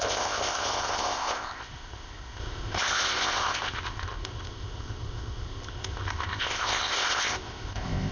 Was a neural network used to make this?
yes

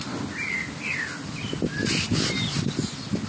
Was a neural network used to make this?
no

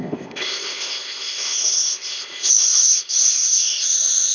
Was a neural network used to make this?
yes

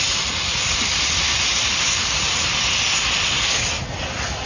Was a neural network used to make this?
no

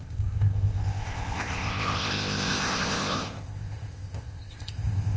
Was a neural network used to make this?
yes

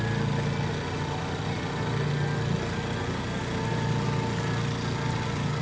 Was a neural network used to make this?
no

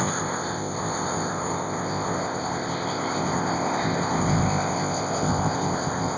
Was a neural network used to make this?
yes